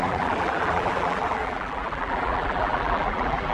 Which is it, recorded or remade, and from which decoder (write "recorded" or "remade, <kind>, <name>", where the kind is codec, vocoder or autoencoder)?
remade, vocoder, BigVGAN v2